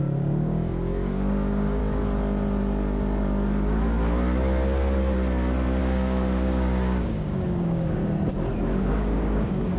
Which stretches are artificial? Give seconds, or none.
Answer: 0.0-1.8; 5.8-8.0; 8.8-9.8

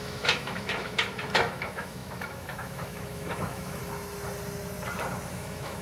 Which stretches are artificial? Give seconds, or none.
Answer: 0.0-3.8; 5.3-5.8

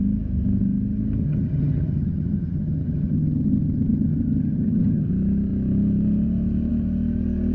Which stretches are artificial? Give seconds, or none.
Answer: 1.2-5.1